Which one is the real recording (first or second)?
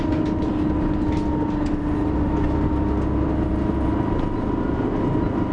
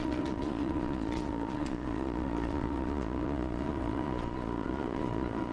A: first